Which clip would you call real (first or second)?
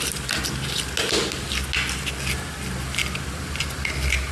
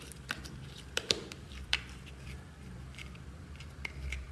first